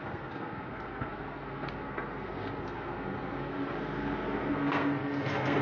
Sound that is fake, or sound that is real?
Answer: fake